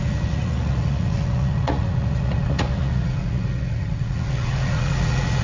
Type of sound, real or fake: fake